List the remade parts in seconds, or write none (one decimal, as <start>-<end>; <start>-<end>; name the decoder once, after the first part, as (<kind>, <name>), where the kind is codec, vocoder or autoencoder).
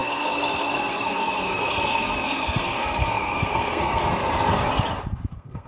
0.0-4.0 (codec, SNAC); 5.3-5.7